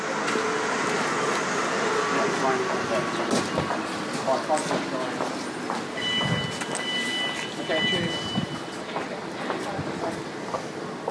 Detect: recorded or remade recorded